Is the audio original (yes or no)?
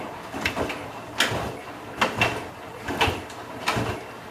yes